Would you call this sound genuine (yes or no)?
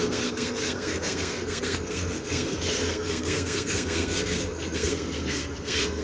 no